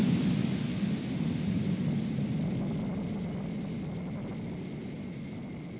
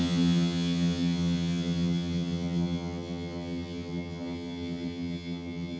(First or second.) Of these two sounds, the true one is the first